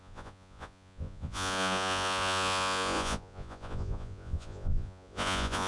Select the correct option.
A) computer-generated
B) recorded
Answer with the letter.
A